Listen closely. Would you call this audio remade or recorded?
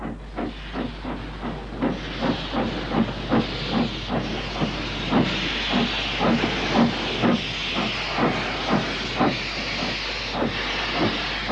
recorded